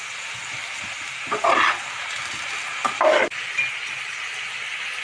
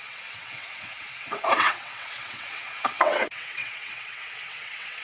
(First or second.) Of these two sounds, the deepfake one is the second